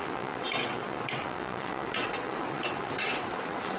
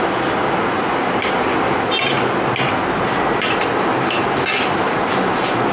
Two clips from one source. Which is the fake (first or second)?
first